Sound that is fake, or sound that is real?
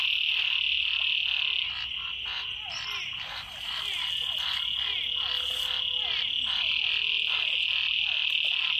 real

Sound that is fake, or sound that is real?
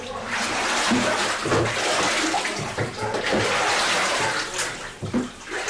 real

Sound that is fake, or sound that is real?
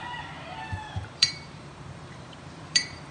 fake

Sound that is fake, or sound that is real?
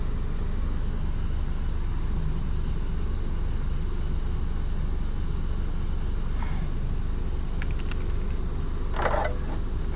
real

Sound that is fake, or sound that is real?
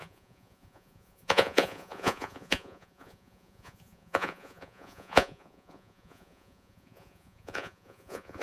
fake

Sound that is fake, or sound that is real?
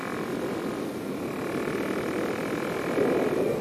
real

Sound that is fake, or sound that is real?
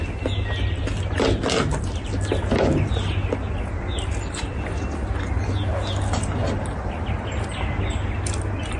real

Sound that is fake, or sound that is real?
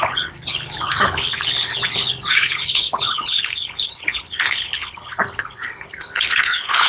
fake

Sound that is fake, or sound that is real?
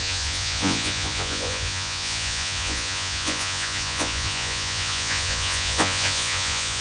fake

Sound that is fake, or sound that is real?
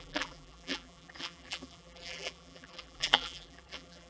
fake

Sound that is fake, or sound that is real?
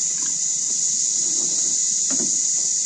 real